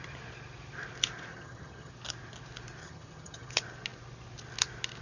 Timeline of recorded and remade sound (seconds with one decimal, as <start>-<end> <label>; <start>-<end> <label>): 0.0-1.3 recorded; 1.3-1.9 remade; 1.9-2.8 recorded; 2.8-3.5 remade; 3.5-5.0 recorded